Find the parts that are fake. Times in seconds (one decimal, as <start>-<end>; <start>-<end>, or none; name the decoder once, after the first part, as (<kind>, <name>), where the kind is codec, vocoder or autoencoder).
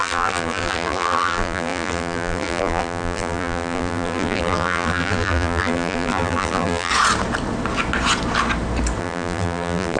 0.0-6.9 (vocoder, BigVGAN v2); 9.0-10.0